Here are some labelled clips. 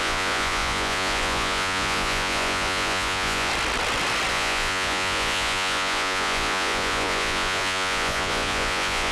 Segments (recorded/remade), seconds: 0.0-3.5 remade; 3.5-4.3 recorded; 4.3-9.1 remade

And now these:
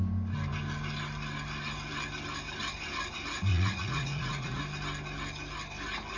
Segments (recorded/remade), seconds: 0.0-3.5 recorded; 3.5-4.6 remade; 4.6-6.2 recorded

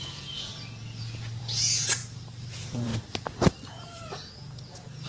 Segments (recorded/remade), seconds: 0.0-0.5 remade; 0.5-1.4 recorded; 1.4-2.0 remade; 2.0-2.5 recorded; 2.5-2.9 remade; 2.9-3.7 recorded; 3.7-5.1 remade

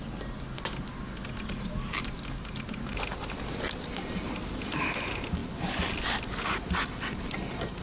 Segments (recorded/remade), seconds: 0.0-7.8 recorded